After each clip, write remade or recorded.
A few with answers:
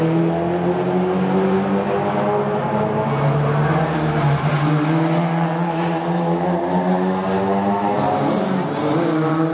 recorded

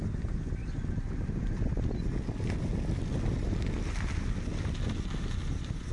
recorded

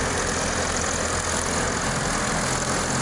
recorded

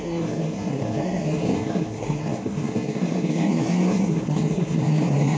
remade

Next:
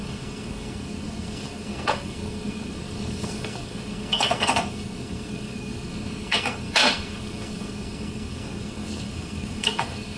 remade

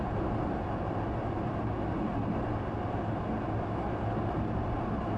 recorded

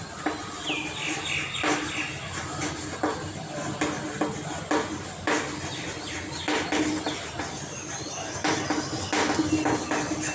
recorded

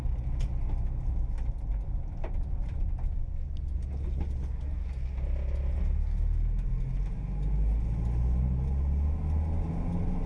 recorded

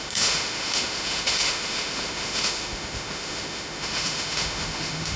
remade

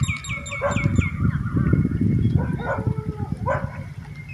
recorded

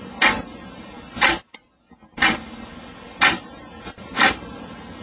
recorded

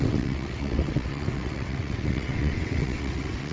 remade